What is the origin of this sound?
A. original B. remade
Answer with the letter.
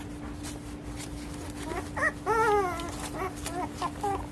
A